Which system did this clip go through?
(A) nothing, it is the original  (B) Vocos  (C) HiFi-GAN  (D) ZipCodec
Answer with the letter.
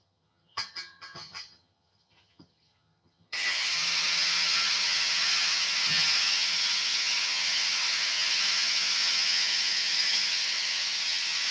C